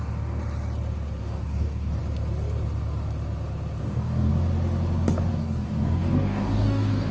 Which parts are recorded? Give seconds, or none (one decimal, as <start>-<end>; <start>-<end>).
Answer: 0.4-1.2; 2.0-3.8; 4.3-5.3